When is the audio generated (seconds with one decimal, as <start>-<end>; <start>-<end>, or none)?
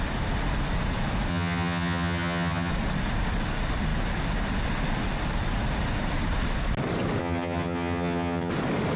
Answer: 1.3-2.7; 7.2-8.5